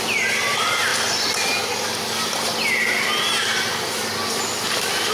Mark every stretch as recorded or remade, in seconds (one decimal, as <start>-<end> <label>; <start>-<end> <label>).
0.0-5.1 recorded